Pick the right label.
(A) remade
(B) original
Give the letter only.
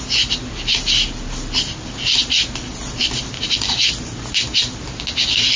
B